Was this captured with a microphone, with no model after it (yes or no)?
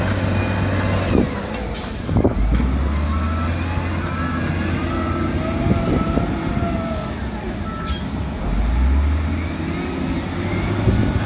yes